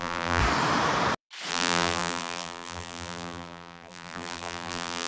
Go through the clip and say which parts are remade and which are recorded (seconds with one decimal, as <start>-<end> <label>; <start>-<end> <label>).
0.0-0.4 remade; 0.4-1.5 recorded; 1.5-5.1 remade